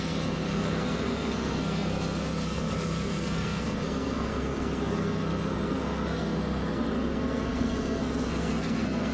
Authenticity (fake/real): fake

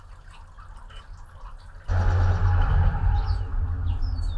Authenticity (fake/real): real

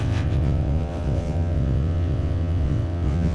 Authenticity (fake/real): fake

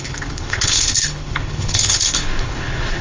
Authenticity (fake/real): fake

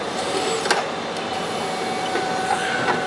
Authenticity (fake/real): real